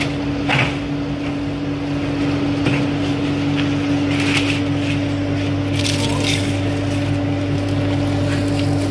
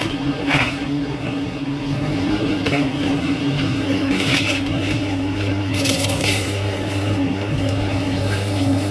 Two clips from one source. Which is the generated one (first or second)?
second